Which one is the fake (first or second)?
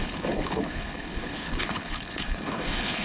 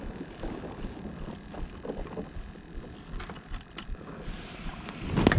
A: first